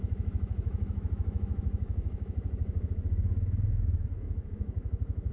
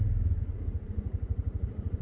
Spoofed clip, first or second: first